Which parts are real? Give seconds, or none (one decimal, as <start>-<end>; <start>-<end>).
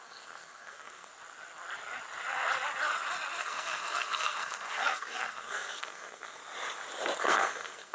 1.1-3.4; 6.4-7.2